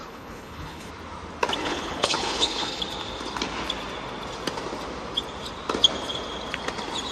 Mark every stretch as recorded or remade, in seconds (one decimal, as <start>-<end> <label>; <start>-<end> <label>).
0.0-0.9 remade; 0.9-1.6 recorded; 1.6-2.8 remade; 2.8-7.1 recorded